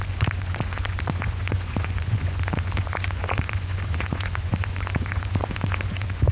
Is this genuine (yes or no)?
no